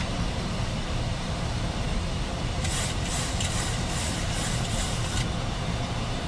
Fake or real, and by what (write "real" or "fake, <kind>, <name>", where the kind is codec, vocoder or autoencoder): fake, vocoder, BigVGAN v2